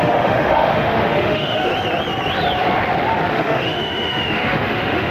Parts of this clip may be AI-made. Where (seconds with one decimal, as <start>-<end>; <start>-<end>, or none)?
0.0-1.7; 3.3-5.1